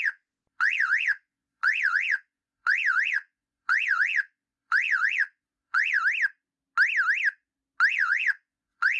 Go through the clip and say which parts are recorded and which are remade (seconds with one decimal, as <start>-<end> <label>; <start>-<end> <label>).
0.0-6.0 remade; 6.0-7.9 recorded; 7.9-9.0 remade